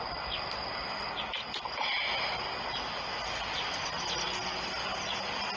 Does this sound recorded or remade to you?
recorded